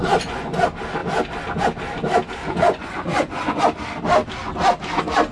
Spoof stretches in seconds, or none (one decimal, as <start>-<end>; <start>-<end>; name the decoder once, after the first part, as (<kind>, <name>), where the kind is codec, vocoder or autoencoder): 0.0-0.6 (vocoder, Vocos); 2.4-3.6

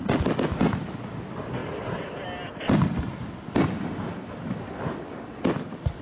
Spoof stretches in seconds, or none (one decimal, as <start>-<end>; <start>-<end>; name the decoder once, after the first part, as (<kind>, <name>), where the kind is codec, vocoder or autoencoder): none

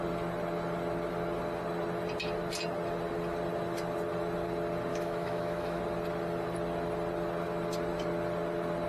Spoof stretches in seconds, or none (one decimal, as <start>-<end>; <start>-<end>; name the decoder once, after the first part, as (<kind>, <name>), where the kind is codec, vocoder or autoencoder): 4.9-5.8 (autoencoder, DAC-VAE)

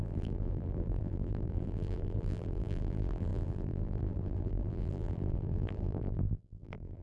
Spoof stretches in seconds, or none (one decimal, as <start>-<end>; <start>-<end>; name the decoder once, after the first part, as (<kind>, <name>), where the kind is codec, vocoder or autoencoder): 0.0-7.0 (vocoder, BigVGAN v2)

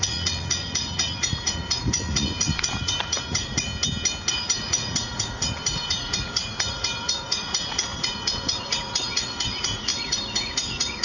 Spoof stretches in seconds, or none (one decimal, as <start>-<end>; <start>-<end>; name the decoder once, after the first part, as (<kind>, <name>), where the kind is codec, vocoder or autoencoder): 0.0-3.7 (vocoder, Vocos); 4.3-11.0

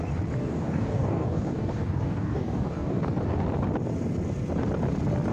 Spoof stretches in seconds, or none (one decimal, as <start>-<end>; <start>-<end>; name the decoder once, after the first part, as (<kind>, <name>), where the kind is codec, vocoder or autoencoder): 0.4-3.0 (codec, DAC)